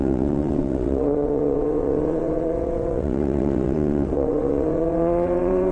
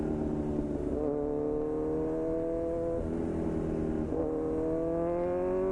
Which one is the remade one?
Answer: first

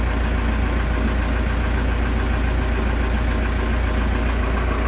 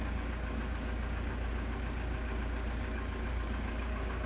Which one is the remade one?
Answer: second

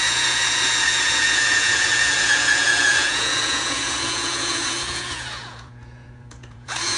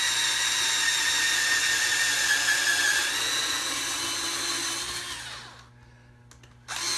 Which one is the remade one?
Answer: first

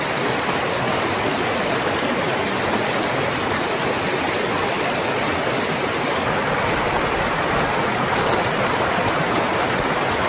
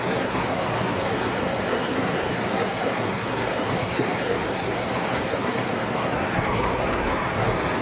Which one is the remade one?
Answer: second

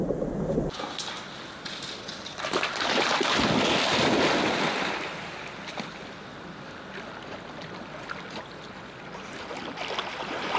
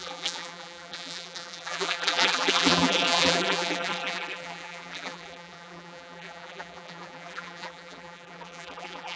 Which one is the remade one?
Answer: second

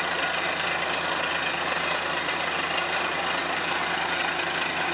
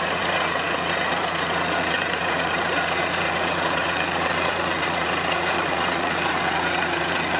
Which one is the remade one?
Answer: second